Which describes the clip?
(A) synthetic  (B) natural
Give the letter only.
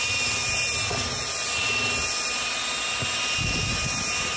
B